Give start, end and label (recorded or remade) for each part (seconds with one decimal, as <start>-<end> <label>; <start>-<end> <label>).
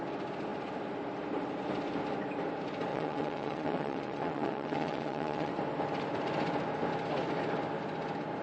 0.0-2.9 recorded; 2.9-5.5 remade; 5.5-8.4 recorded